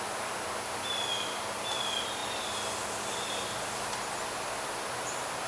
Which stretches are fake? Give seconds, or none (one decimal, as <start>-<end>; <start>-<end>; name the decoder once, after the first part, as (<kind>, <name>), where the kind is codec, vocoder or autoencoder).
none